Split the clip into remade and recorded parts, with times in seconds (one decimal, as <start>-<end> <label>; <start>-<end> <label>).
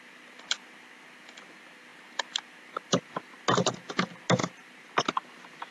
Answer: 0.0-5.7 recorded